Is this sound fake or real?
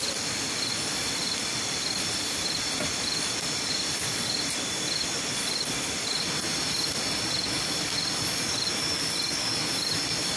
real